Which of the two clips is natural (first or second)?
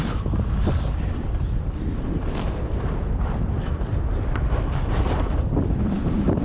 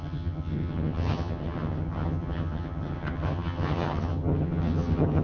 first